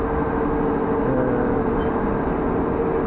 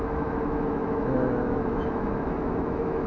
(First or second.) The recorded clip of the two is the first